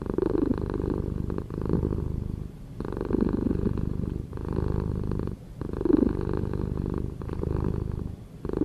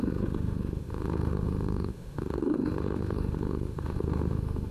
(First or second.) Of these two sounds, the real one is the first